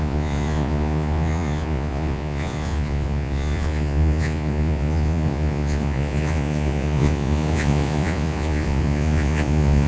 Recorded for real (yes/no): no